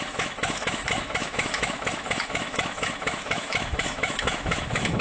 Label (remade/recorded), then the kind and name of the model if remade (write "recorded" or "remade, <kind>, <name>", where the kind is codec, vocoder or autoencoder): remade, autoencoder, DAC-VAE